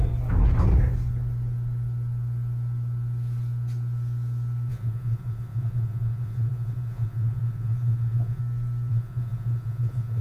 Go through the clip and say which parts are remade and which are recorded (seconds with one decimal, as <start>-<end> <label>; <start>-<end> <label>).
0.0-4.7 recorded; 4.7-8.4 remade; 8.4-8.9 recorded; 8.9-10.2 remade